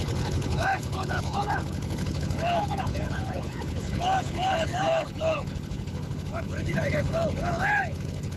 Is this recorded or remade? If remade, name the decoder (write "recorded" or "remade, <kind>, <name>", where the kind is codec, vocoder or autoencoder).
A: remade, codec, HILCodec